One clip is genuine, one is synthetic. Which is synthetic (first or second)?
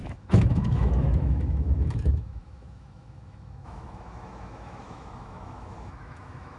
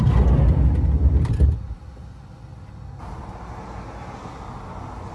first